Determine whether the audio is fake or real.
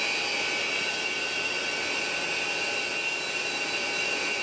fake